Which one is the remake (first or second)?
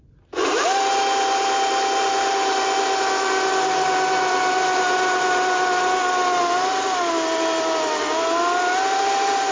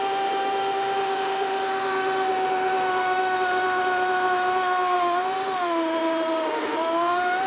second